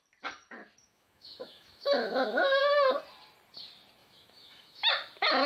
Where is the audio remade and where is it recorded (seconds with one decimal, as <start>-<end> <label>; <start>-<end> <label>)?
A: 0.0-0.8 recorded; 0.8-2.6 remade; 2.6-4.0 recorded; 4.0-4.9 remade; 4.9-5.5 recorded